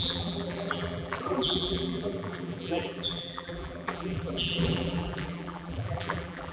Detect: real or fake fake